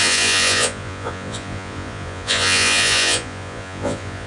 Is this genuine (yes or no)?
no